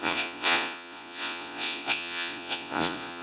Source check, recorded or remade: remade